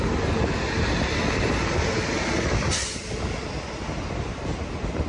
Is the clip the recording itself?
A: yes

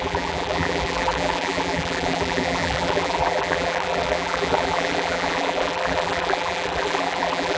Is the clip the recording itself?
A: no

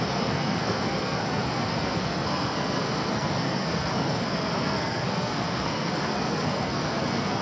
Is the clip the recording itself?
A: no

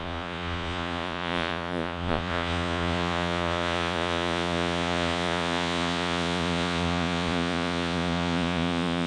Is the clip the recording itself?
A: no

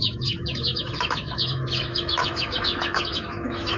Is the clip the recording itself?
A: no